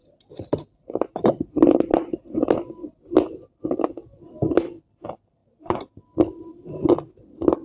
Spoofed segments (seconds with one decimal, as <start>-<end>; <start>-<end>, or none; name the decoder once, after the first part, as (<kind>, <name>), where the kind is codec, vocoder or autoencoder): 5.4-6.0 (vocoder, BigVGAN v2)